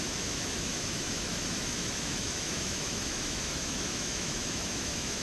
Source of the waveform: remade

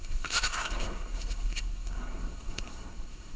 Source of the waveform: remade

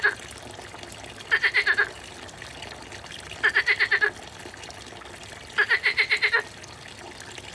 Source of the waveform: recorded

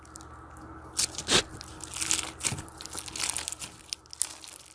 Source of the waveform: recorded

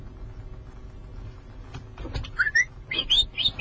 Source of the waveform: recorded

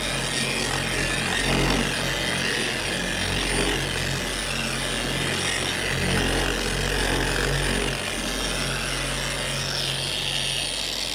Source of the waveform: recorded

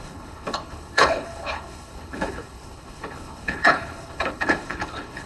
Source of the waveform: remade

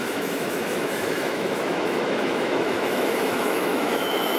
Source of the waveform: remade